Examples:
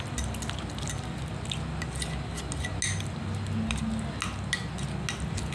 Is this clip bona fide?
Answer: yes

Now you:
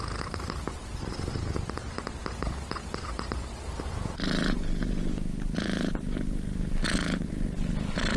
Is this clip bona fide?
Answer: yes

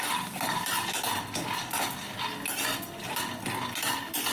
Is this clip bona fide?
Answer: yes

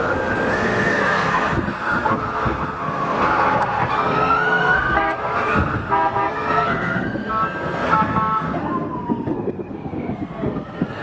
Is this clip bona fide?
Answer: no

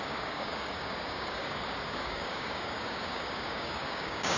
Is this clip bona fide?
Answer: no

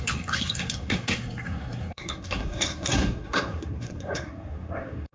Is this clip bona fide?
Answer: no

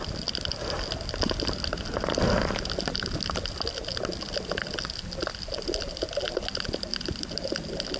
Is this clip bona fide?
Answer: yes